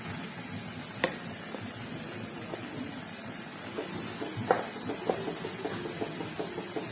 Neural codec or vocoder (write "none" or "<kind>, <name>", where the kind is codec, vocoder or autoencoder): none